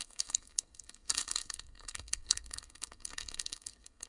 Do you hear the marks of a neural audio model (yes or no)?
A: yes